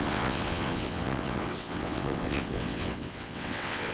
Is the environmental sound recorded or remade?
remade